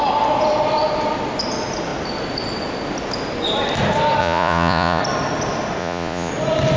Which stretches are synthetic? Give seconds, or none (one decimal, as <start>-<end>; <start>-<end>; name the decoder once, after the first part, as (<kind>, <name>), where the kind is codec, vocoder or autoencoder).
4.2-5.0 (vocoder, Vocos); 5.8-6.3

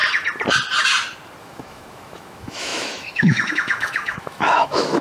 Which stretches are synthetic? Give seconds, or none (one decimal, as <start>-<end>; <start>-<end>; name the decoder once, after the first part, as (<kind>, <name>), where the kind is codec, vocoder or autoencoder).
1.4-5.0 (autoencoder, DAC-VAE)

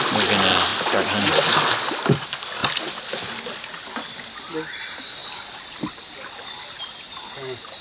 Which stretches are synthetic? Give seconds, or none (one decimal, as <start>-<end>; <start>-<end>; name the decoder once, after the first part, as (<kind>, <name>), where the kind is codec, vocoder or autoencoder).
none